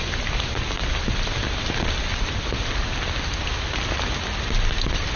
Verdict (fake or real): real